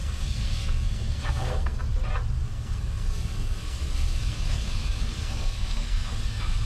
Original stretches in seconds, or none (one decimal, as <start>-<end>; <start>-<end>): 1.8-2.5